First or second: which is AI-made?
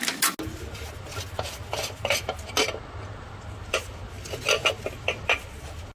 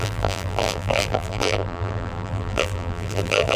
second